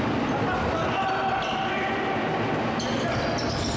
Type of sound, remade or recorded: recorded